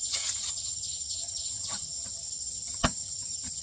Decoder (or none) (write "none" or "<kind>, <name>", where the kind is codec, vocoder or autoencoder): vocoder, HiFi-GAN